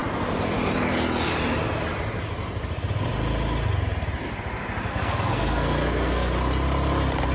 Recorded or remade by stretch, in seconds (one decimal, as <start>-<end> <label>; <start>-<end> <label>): 0.0-4.9 recorded; 4.9-6.3 remade; 6.3-7.3 recorded